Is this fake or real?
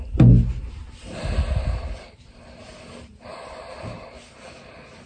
real